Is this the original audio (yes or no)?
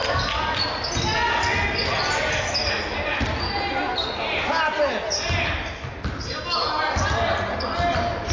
yes